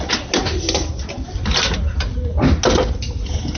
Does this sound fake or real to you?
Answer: real